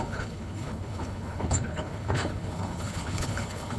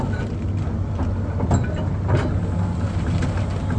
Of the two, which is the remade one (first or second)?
first